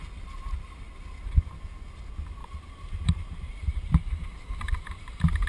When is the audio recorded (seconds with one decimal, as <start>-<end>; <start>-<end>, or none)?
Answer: 0.0-2.4; 5.0-5.5